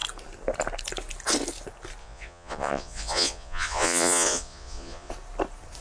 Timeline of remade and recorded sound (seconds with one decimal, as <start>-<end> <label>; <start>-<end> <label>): 0.0-2.0 recorded; 2.0-5.1 remade; 5.1-5.8 recorded